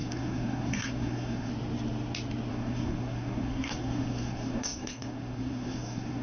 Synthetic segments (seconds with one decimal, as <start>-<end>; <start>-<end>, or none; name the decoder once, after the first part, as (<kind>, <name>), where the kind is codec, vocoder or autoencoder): 0.0-1.5 (codec, SNAC); 2.5-6.2